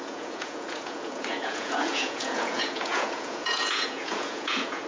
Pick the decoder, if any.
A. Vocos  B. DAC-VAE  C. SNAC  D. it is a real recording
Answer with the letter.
A